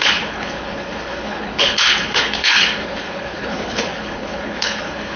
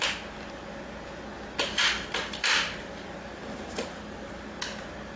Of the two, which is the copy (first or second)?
first